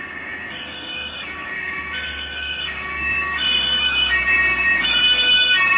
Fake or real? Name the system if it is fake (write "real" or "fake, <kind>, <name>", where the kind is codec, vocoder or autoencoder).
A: fake, codec, DAC